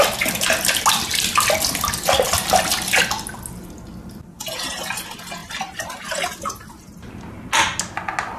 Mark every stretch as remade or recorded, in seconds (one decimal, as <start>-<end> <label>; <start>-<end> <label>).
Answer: 0.0-1.1 recorded; 1.1-1.8 remade; 1.8-8.4 recorded